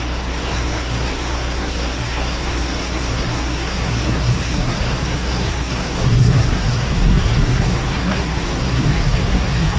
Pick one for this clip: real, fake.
fake